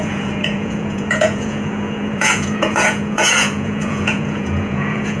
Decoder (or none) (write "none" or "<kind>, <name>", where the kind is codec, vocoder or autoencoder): vocoder, Vocos